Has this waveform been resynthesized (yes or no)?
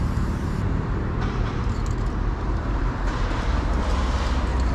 yes